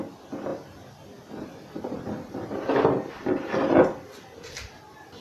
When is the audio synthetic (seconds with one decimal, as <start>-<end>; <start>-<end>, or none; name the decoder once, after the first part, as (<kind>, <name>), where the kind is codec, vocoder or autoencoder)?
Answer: none